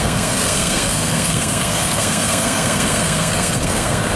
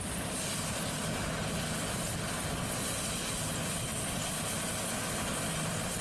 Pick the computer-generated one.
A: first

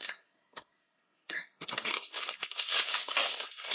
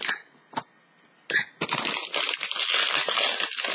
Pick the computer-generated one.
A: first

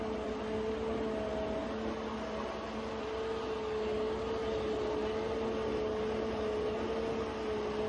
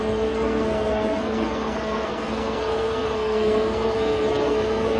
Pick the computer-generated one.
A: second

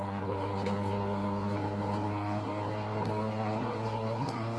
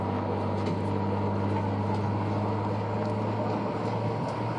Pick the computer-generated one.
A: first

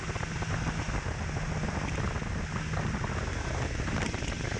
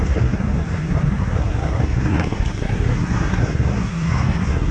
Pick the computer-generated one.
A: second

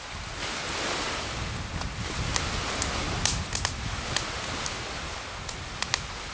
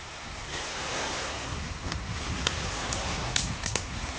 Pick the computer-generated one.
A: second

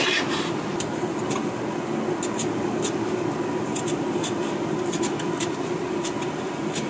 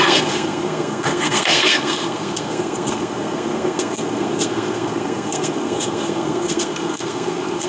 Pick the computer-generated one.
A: second